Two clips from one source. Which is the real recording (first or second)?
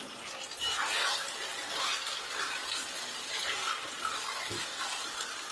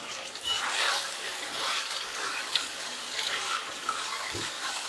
first